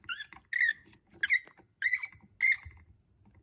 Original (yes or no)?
yes